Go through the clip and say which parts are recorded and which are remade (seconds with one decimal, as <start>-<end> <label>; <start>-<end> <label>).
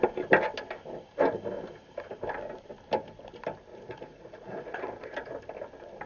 0.0-3.7 recorded; 3.7-4.8 remade; 4.8-6.1 recorded